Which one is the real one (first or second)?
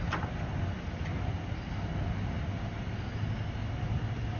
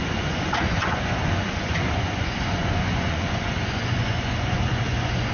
first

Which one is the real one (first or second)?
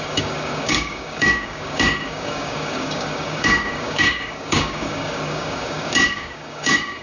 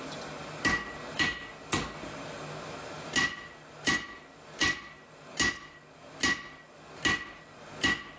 second